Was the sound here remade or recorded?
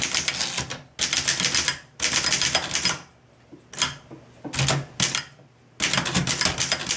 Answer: recorded